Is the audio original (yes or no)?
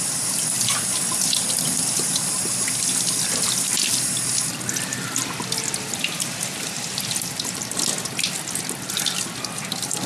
yes